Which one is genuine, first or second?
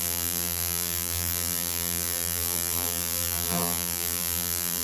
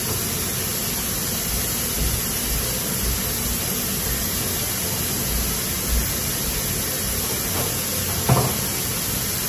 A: second